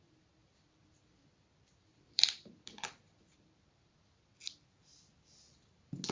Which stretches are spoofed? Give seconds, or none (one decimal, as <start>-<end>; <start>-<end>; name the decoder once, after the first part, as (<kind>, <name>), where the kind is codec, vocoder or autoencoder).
0.4-4.1 (vocoder, BigVGAN v2)